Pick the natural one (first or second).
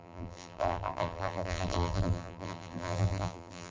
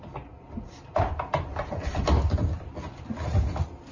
second